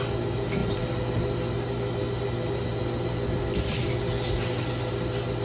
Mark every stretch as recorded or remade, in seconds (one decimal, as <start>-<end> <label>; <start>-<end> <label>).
0.0-5.4 recorded